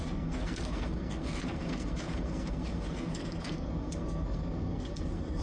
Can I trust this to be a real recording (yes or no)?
no